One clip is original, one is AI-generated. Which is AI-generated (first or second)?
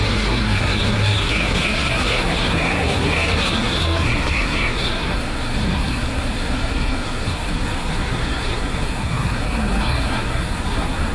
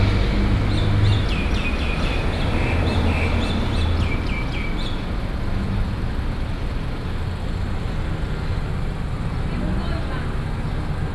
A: first